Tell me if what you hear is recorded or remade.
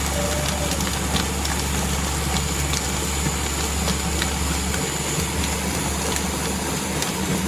recorded